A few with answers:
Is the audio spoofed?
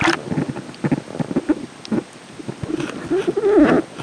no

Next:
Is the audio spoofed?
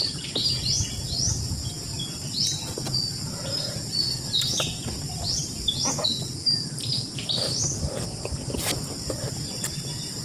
no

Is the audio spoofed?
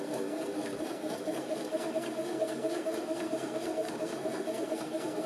yes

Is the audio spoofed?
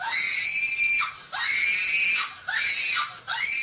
no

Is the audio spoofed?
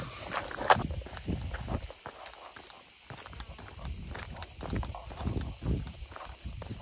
no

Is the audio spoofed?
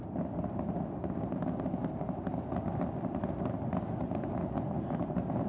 no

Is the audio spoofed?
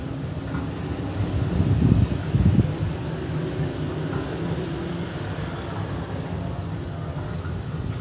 no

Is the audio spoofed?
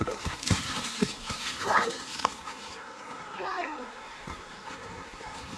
yes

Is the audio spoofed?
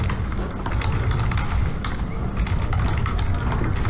no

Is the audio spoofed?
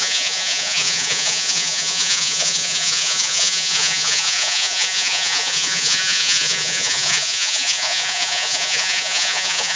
yes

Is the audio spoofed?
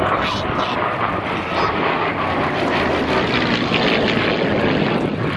no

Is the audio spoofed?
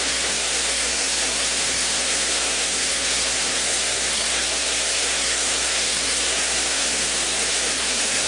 yes